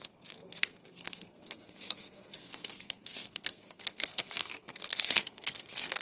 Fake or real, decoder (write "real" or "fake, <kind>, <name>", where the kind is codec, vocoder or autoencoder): fake, codec, SNAC